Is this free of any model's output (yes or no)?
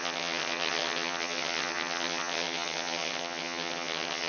no